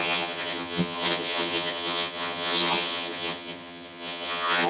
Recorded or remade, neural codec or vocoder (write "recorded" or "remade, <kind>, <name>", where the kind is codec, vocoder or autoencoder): remade, vocoder, HiFi-GAN